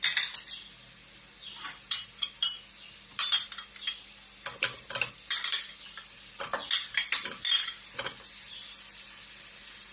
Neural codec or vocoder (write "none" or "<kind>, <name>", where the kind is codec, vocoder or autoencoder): vocoder, BigVGAN v2